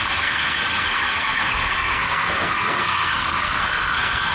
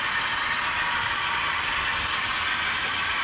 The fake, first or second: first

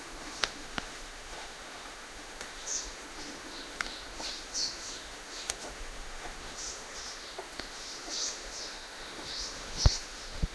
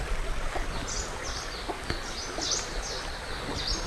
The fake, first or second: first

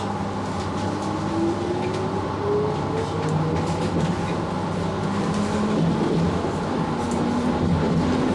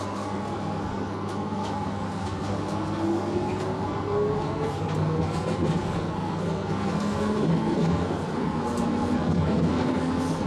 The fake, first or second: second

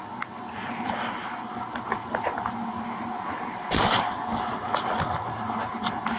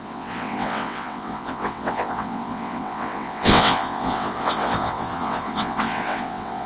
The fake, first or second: second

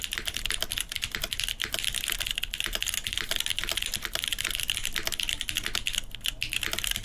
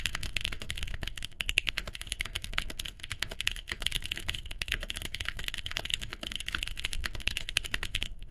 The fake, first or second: second